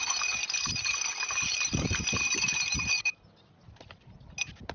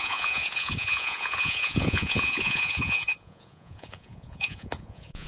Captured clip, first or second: first